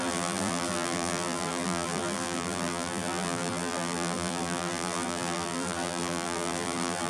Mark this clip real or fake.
fake